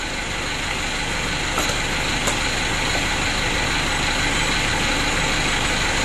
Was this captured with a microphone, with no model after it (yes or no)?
yes